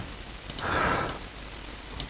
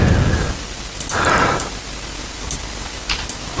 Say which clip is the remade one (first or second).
first